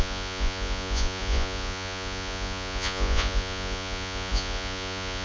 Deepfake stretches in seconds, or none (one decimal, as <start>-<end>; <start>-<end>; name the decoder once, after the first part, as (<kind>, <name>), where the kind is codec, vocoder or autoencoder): 0.0-5.2 (vocoder, Vocos)